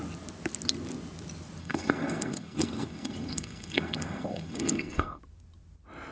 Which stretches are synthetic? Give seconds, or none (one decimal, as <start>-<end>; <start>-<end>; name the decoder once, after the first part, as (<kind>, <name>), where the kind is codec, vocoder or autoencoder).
1.6-5.2 (codec, SNAC)